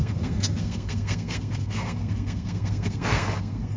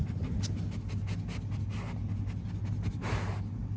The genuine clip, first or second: second